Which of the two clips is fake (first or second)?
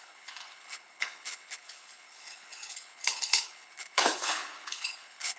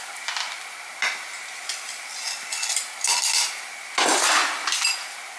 first